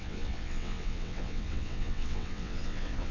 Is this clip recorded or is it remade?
remade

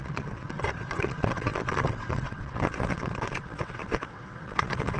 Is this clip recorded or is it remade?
remade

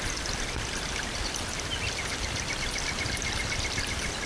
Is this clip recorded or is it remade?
recorded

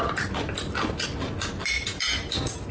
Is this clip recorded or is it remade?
recorded